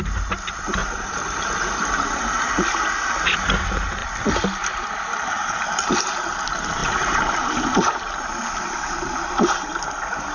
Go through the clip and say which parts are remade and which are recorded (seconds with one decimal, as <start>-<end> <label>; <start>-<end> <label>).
0.0-0.8 recorded; 0.8-3.1 remade; 3.1-4.0 recorded; 4.0-5.3 remade; 5.3-6.8 recorded; 6.8-7.9 remade; 7.9-10.3 recorded